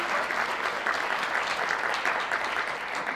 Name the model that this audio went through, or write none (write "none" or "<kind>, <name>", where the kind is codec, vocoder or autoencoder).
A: none